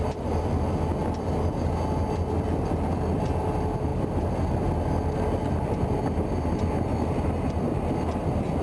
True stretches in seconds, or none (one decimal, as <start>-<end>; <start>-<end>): 0.0-8.6